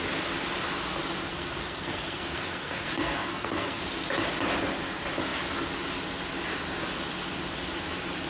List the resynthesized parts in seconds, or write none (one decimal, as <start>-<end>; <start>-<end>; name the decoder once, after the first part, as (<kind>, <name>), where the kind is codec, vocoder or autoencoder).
1.3-3.8 (codec, SNAC)